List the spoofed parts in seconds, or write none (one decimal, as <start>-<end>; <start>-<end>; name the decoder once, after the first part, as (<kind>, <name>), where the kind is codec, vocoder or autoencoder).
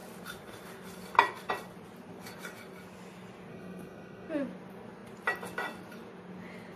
3.5-4.3 (codec, SNAC)